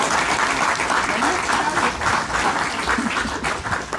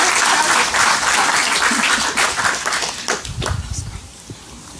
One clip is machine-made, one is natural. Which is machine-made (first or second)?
second